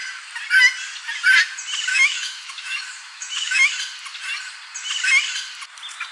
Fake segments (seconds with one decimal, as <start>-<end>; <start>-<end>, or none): 1.9-3.7